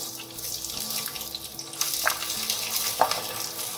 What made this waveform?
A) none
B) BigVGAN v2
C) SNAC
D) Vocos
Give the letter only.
A